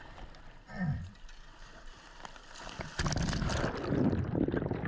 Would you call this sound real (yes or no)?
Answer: yes